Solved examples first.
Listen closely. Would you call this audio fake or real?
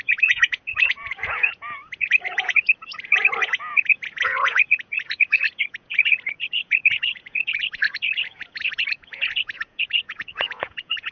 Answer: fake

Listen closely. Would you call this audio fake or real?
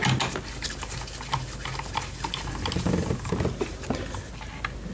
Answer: real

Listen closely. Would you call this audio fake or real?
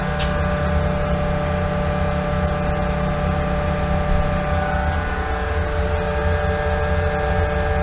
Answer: real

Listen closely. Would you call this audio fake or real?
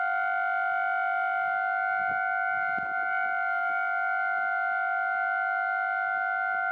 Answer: real